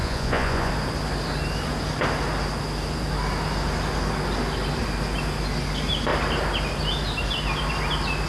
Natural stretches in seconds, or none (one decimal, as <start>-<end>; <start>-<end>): 0.7-8.3